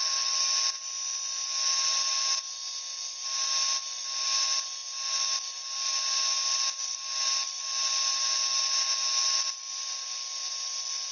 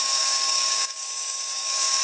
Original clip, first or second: first